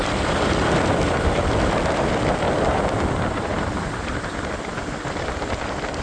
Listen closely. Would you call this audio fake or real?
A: fake